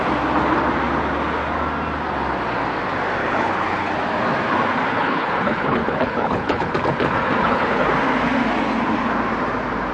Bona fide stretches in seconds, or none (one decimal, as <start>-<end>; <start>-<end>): 0.0-3.2; 3.9-4.9; 6.7-7.4; 7.9-9.9